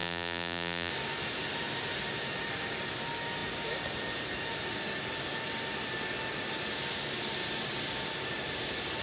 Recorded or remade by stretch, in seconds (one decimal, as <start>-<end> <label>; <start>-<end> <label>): 0.0-0.9 remade; 0.9-9.0 recorded